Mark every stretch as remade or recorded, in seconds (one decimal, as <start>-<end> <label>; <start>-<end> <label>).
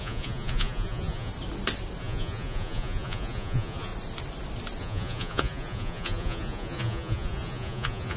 0.0-1.3 remade; 1.3-2.0 recorded; 2.0-3.9 remade; 3.9-4.8 recorded; 4.8-8.2 remade